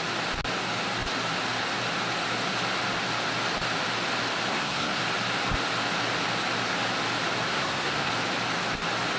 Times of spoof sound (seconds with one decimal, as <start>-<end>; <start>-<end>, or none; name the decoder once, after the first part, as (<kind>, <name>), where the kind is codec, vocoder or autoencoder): 4.5-5.0 (codec, SNAC); 7.5-8.1